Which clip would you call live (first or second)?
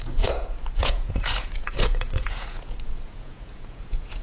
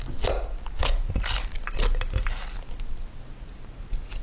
second